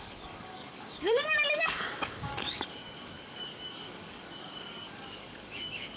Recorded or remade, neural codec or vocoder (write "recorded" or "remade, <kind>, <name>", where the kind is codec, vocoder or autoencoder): remade, codec, DAC